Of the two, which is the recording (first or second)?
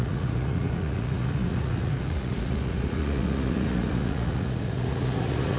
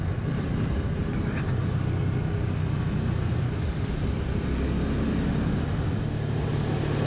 second